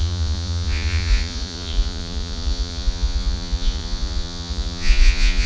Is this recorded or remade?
remade